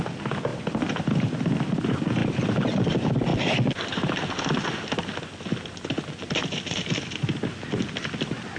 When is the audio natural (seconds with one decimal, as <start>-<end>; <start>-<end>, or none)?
0.0-8.6